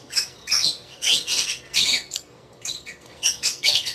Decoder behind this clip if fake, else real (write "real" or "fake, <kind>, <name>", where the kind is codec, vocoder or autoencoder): fake, codec, SNAC